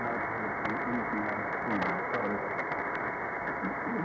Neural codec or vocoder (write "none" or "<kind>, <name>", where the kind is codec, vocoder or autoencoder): none